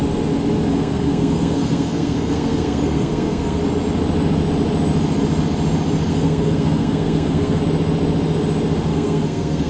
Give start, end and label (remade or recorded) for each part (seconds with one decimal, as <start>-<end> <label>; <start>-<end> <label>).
0.0-0.7 recorded; 0.7-3.6 remade; 3.6-6.1 recorded; 6.1-7.6 remade; 7.6-8.9 recorded; 8.9-9.7 remade